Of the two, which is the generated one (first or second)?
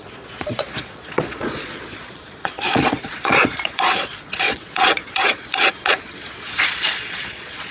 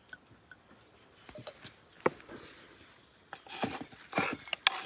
first